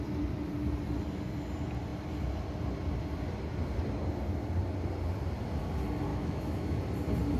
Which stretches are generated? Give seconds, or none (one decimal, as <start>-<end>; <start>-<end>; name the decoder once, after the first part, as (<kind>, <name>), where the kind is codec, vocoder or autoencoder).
6.1-6.8 (autoencoder, DAC-VAE)